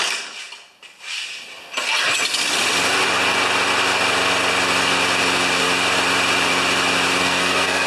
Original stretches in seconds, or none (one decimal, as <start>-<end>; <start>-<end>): 0.0-7.2